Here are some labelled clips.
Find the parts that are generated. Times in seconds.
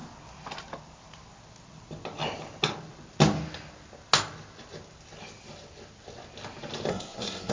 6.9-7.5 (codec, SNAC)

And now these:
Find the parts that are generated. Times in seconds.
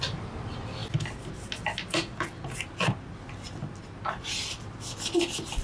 none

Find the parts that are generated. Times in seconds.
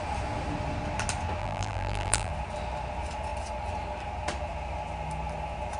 1.4-2.3 (vocoder, BigVGAN v2)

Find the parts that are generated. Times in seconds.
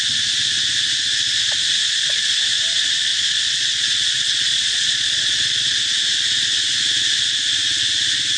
1.8-2.4 (vocoder, Vocos); 3.1-5.8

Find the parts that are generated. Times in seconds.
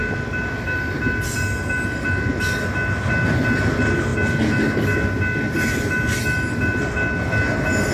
none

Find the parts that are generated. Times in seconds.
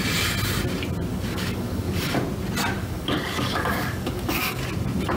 1.1-2.2 (codec, DAC); 2.8-4.6